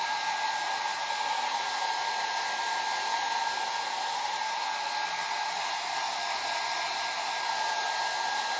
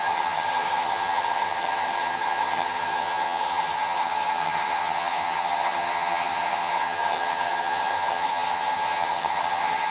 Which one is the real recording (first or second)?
first